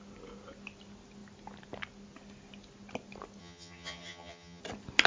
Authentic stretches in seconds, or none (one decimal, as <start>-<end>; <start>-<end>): 0.0-3.4; 4.6-5.1